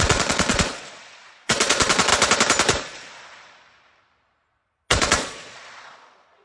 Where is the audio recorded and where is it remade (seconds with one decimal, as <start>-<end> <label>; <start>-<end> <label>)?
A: 0.0-2.1 remade; 2.1-4.9 recorded; 4.9-6.4 remade